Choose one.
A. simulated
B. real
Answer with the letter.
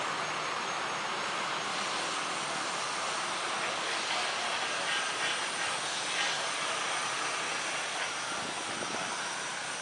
B